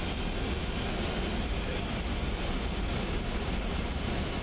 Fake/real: real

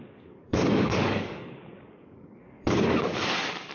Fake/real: fake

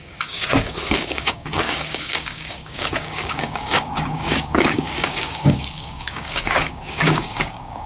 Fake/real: fake